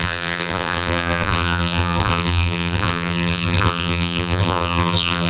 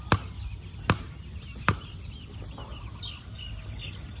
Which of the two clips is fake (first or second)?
first